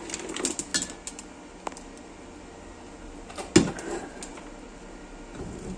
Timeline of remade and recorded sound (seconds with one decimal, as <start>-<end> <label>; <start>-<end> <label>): 0.0-5.8 recorded